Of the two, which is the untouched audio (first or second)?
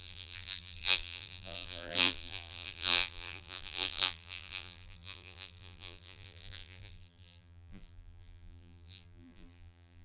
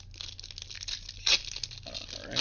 second